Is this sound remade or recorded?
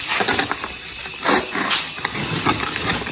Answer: recorded